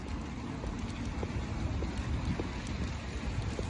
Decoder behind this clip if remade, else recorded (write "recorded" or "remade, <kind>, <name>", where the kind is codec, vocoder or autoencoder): recorded